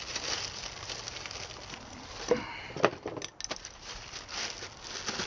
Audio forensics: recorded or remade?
recorded